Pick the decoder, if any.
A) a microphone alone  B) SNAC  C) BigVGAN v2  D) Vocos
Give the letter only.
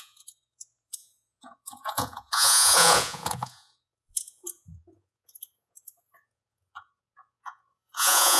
D